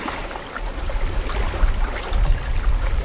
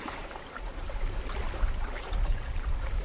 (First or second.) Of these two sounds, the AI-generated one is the second